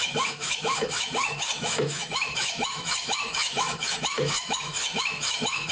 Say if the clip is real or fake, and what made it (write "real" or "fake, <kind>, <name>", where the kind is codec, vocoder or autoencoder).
fake, autoencoder, DAC-VAE